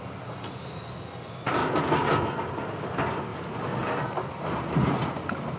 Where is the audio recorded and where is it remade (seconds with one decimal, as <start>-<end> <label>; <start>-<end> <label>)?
0.0-1.6 recorded; 1.6-2.2 remade; 2.2-5.6 recorded